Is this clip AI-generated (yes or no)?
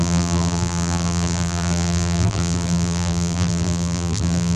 yes